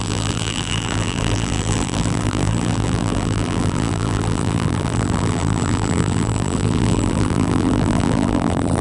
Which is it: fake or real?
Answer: fake